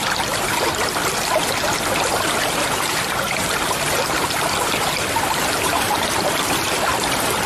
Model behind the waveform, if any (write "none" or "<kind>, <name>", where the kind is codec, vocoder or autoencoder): vocoder, BigVGAN v2